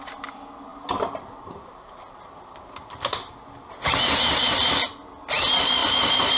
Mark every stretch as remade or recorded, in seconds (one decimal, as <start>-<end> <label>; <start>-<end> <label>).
0.0-0.7 recorded; 0.7-3.4 remade; 3.4-5.8 recorded; 5.8-6.4 remade